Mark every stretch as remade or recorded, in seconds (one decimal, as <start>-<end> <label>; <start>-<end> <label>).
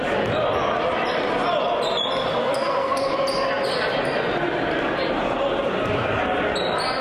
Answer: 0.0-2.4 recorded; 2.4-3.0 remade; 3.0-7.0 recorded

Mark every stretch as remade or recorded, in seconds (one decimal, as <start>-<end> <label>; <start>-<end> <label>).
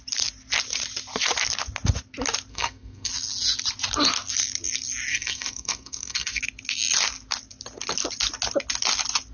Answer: 0.0-2.5 recorded; 2.5-3.1 remade; 3.1-5.1 recorded; 5.1-6.4 remade; 6.4-9.3 recorded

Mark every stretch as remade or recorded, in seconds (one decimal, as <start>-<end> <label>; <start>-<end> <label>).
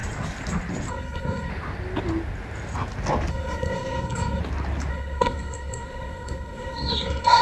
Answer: 0.0-0.9 recorded; 0.9-1.5 remade; 1.5-3.3 recorded; 3.3-4.4 remade; 4.4-4.9 recorded; 4.9-7.4 remade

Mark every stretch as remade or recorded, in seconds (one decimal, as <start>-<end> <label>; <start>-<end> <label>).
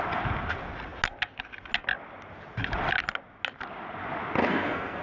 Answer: 0.0-4.4 recorded; 4.4-5.0 remade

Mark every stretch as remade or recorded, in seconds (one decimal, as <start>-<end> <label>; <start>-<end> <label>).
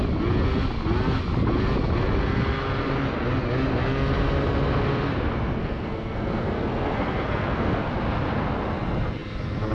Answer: 0.0-5.6 recorded; 5.6-7.9 remade; 7.9-9.7 recorded